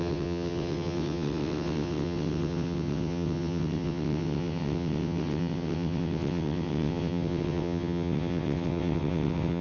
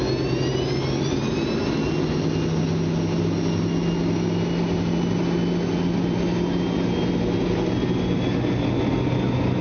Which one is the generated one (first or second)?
first